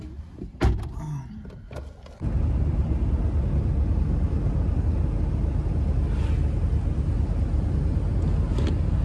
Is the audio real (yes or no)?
yes